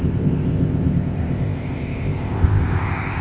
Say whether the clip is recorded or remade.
remade